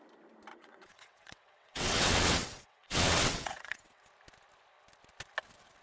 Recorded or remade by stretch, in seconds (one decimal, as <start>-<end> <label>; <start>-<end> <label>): 0.0-0.5 recorded; 0.5-4.0 remade; 4.0-5.8 recorded